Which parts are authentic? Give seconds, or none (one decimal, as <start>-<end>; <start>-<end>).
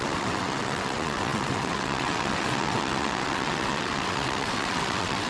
none